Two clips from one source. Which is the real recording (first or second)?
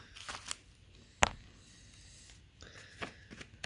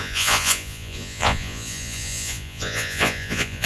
first